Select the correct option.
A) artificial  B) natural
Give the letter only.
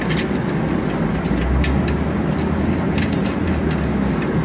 B